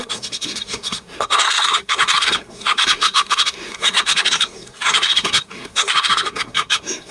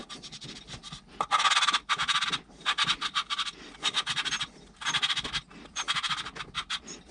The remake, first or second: first